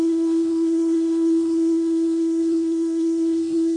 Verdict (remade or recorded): remade